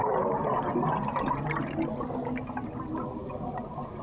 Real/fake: real